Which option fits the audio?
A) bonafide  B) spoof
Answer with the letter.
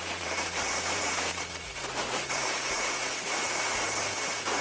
B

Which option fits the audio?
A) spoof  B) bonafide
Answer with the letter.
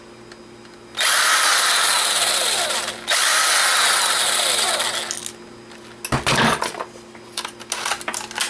B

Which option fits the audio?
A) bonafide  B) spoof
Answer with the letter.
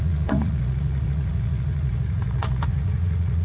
B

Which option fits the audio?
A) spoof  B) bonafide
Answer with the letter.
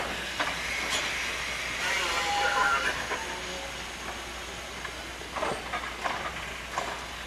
B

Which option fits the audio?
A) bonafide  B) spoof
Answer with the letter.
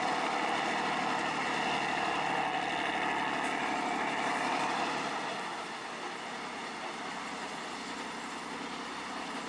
A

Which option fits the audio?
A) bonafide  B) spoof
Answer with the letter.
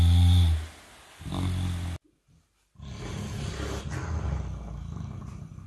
A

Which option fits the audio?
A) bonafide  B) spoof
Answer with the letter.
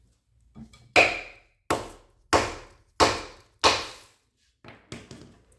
A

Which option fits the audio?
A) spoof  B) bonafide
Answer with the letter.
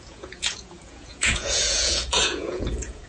A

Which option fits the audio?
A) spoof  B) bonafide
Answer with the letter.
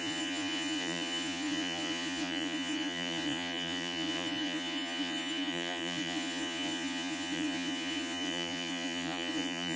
A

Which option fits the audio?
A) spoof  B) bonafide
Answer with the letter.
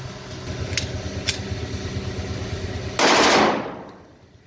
B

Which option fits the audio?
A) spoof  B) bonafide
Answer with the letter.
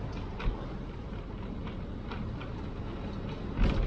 B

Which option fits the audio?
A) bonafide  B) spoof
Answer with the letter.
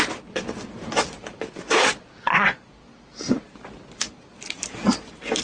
A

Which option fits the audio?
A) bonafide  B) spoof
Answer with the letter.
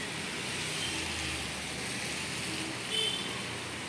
A